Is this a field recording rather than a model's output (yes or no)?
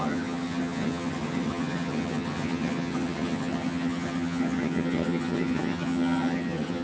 no